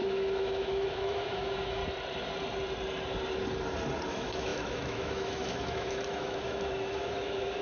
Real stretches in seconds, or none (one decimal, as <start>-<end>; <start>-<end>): 1.8-4.1